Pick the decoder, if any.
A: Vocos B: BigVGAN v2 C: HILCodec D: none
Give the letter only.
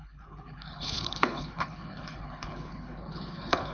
C